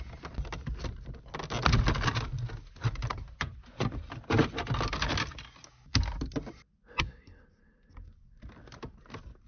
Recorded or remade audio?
recorded